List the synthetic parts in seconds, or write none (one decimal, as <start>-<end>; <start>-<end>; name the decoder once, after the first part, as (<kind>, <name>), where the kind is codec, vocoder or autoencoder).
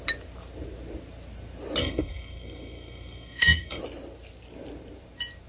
1.8-3.8 (codec, SNAC)